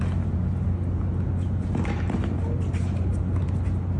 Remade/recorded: recorded